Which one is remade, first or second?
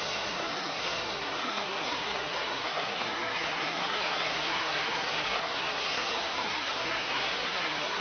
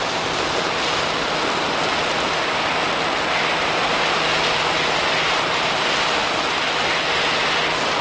first